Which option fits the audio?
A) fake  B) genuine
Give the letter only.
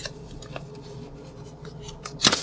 B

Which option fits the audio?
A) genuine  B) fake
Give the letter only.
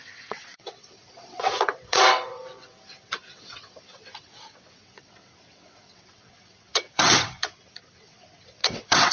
B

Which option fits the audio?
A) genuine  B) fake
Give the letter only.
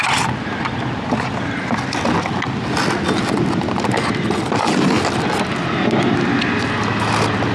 A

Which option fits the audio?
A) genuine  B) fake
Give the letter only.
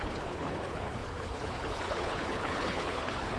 B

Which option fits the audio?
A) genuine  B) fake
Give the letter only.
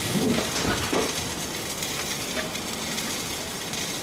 A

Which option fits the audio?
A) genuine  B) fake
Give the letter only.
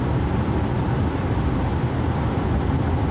A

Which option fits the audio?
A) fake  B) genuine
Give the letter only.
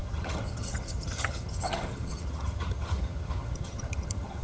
A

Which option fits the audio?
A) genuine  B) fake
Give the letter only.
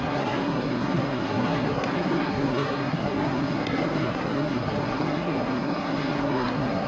B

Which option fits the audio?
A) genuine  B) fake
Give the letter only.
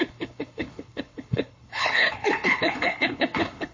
B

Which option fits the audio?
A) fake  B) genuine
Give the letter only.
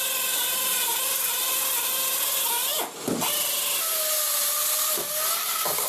B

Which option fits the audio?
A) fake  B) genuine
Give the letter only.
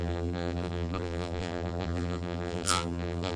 A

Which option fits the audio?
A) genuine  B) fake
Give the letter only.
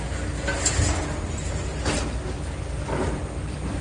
A